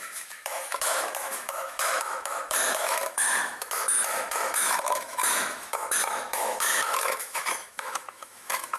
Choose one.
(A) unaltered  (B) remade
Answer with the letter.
B